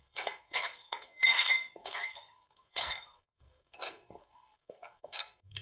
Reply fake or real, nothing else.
fake